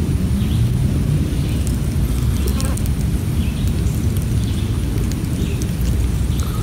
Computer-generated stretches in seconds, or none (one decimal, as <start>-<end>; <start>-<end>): none